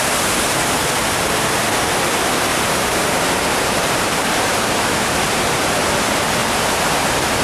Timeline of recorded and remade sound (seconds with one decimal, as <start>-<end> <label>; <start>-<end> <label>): 0.0-2.5 recorded; 2.5-5.8 remade; 5.8-6.4 recorded; 6.4-6.9 remade; 6.9-7.4 recorded